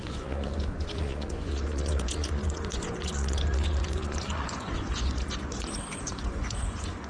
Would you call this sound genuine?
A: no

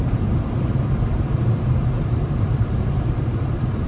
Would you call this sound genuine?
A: no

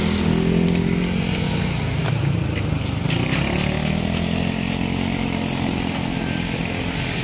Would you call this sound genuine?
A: yes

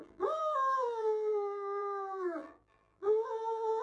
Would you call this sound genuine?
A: no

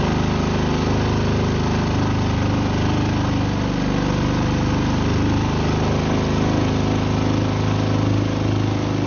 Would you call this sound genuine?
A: yes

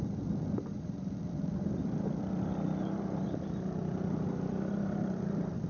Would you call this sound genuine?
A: no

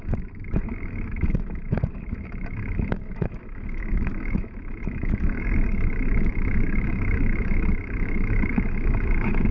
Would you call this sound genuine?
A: no